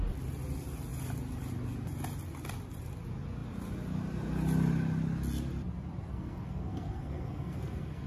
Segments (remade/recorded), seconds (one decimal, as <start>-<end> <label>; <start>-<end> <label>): 0.0-6.1 recorded; 6.1-8.1 remade